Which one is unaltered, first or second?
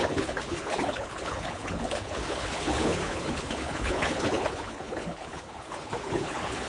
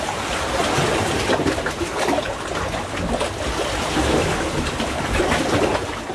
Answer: second